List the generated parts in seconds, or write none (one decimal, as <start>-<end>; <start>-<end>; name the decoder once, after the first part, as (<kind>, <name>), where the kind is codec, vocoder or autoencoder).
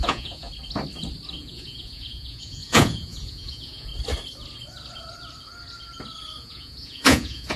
0.0-0.5 (vocoder, Vocos); 1.4-3.9; 6.4-7.6